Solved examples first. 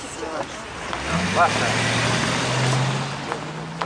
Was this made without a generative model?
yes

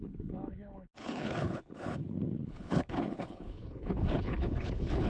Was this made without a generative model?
no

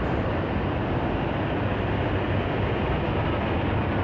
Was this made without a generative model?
yes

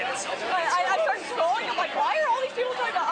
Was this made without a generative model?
yes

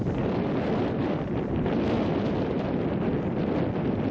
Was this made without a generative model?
yes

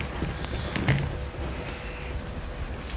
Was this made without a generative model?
yes